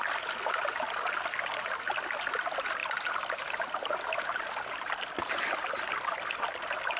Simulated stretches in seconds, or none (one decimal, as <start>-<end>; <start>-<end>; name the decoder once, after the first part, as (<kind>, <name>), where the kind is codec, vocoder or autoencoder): none